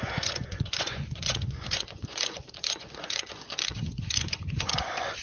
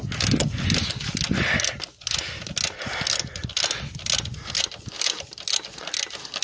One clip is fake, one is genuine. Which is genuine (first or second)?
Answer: second